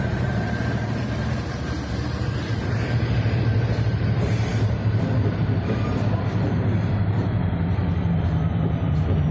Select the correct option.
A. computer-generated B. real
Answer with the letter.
A